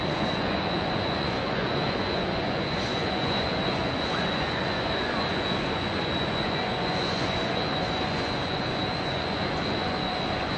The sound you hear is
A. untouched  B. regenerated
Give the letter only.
B